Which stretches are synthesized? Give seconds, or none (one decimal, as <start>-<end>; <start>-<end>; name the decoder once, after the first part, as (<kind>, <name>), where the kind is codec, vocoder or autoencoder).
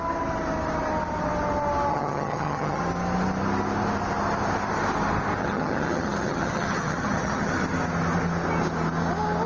1.9-2.8 (vocoder, HiFi-GAN); 5.4-7.5